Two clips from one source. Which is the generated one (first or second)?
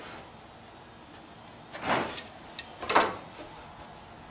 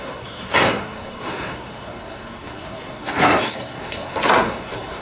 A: second